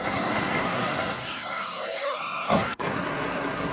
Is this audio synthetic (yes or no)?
yes